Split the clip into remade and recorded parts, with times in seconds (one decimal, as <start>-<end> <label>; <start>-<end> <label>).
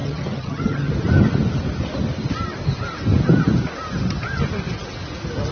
0.0-0.9 remade; 0.9-5.5 recorded